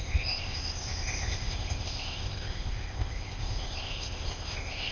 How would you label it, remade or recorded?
remade